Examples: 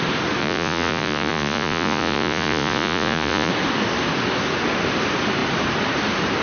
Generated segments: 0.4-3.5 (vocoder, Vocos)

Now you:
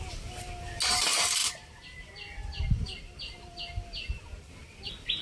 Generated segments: none

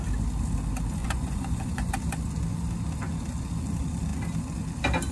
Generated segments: 1.0-1.9 (vocoder, Vocos)

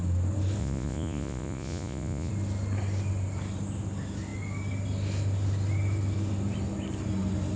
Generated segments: 0.6-2.3 (vocoder, Vocos)

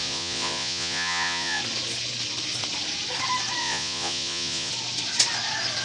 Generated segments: 0.0-1.6 (vocoder, Vocos); 3.6-4.7